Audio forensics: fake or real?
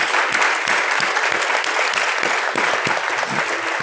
real